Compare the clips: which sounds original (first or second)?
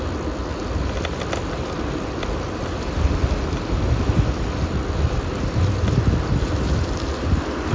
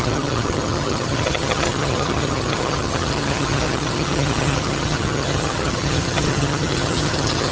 first